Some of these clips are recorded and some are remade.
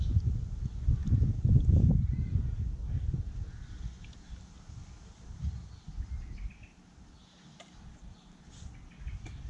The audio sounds recorded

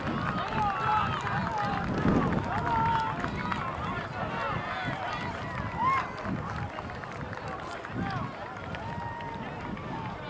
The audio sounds recorded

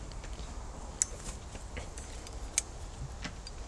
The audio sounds recorded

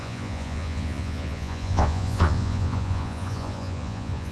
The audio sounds remade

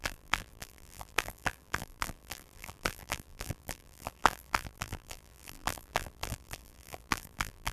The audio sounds remade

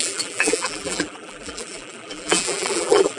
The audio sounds remade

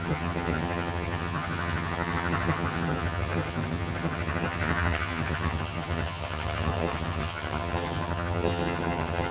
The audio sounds remade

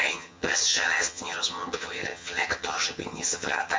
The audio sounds remade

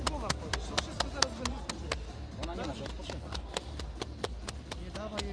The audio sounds recorded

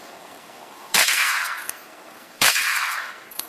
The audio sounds remade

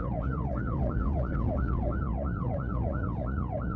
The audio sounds remade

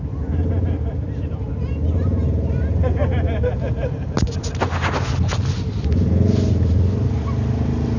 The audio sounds recorded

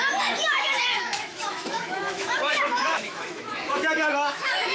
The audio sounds remade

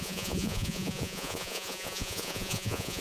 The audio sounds remade